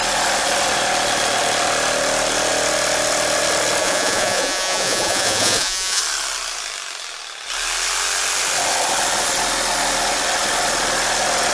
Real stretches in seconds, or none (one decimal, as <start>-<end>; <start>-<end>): 0.0-3.8; 6.0-11.5